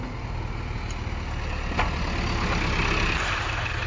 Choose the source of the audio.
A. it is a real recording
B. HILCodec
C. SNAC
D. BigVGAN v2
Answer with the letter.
A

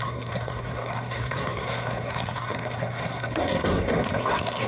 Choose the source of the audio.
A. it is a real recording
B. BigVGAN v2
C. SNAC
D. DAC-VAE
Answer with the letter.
C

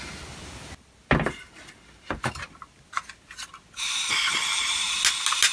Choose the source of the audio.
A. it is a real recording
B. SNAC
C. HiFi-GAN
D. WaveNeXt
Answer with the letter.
A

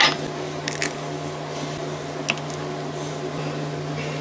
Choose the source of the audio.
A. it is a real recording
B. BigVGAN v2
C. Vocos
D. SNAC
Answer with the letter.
A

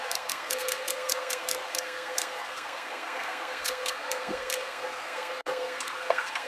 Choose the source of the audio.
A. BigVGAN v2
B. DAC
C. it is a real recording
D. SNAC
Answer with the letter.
D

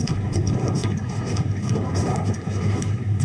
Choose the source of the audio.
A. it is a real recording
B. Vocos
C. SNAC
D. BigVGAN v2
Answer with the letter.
C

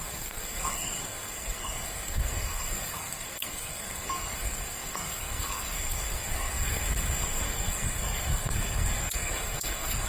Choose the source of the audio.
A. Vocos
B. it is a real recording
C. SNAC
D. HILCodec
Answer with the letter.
C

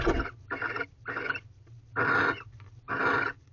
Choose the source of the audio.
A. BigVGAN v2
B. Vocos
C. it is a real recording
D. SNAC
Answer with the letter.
C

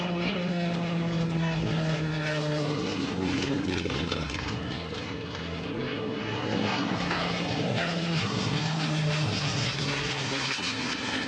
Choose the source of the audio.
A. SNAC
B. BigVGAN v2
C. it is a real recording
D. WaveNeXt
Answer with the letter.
A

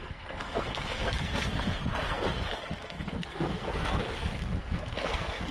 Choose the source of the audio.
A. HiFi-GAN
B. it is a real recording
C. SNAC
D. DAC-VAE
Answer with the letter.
C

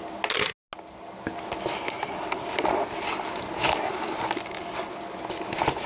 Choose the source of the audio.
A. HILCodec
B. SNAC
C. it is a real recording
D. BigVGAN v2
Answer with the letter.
C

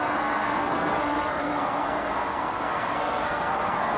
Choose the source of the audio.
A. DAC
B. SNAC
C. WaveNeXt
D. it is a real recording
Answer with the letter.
B